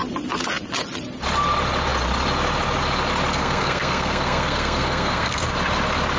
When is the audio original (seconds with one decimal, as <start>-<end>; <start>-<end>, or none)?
0.0-3.3; 5.5-6.2